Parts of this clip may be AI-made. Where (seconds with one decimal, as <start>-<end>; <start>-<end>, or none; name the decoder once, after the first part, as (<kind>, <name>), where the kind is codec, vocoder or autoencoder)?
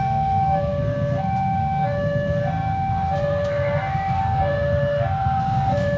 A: 0.0-6.0 (codec, SNAC)